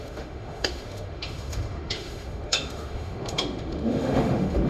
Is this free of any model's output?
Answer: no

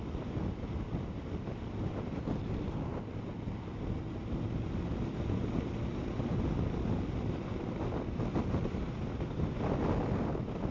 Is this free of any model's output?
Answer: yes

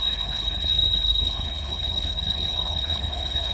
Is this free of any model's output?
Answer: no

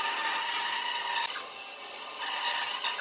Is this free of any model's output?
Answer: yes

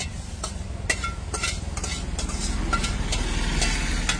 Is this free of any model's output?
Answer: yes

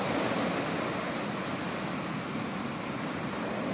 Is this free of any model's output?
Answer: yes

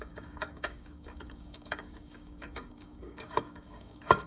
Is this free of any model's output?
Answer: no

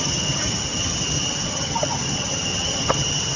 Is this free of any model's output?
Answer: no